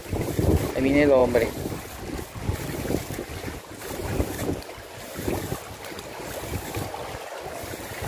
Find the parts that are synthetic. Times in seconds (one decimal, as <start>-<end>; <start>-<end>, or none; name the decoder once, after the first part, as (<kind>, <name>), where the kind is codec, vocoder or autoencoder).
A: 4.0-5.2 (vocoder, BigVGAN v2)